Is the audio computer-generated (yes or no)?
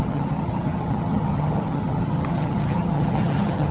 yes